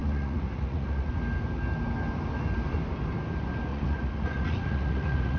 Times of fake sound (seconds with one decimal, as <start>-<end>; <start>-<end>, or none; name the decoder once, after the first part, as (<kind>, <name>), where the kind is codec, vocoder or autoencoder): 0.0-1.1 (vocoder, Vocos); 3.7-5.4